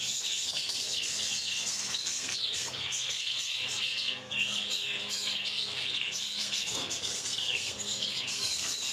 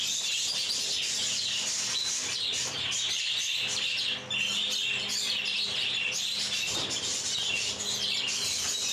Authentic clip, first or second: second